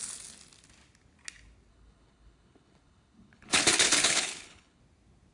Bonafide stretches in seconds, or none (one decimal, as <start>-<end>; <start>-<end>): 0.0-1.7; 4.8-5.3